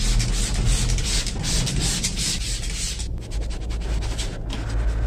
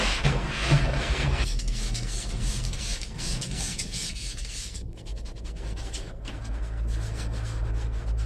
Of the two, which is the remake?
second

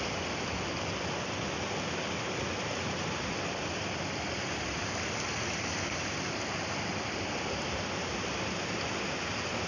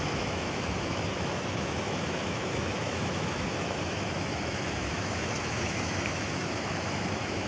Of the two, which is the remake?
second